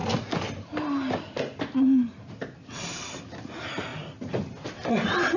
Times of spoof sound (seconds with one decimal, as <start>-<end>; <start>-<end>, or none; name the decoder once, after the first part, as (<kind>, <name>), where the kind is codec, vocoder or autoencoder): none